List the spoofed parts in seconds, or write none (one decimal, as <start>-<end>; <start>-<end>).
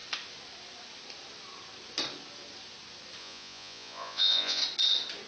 3.2-4.6